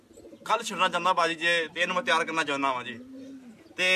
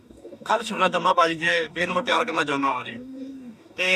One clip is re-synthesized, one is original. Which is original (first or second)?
first